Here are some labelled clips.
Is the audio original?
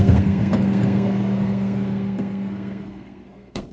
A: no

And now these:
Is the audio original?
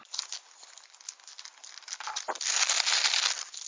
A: yes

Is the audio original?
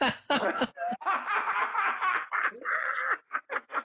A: yes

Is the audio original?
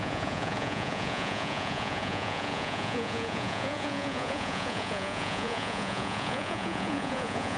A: no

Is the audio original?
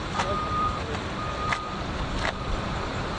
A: no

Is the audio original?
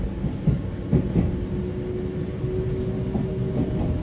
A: yes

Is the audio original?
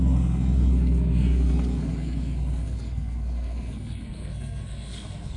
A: no